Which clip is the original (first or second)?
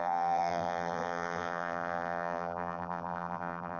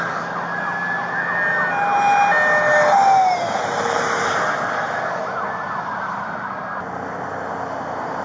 second